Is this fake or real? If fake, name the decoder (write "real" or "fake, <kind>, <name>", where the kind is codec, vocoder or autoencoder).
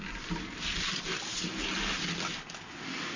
real